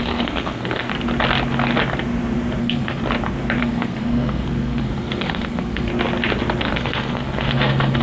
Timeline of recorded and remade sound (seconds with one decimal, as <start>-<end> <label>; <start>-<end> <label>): 0.0-0.9 remade; 0.9-2.6 recorded; 2.6-3.0 remade; 3.0-3.6 recorded; 3.6-5.9 remade; 5.9-6.6 recorded; 6.6-8.0 remade